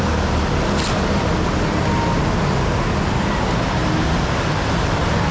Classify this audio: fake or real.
real